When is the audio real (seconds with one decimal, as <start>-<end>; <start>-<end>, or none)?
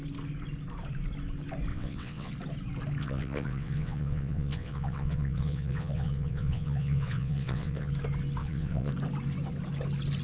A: 0.0-1.7; 2.3-3.0; 7.9-8.4; 8.9-10.2